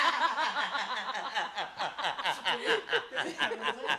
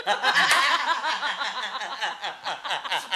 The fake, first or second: first